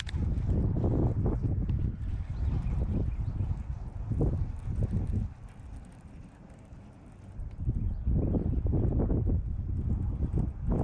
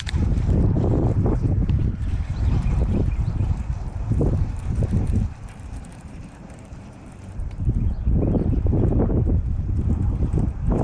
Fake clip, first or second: second